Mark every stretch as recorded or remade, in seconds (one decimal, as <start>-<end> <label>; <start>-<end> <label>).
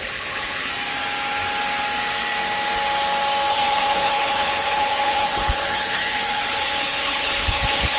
0.0-0.7 remade; 0.7-3.5 recorded; 3.5-8.0 remade